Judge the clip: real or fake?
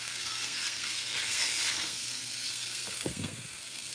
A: fake